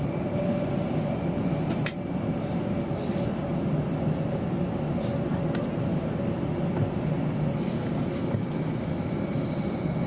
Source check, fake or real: real